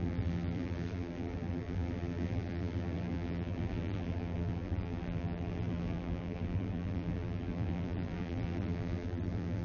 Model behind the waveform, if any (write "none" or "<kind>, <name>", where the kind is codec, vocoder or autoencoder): vocoder, BigVGAN v2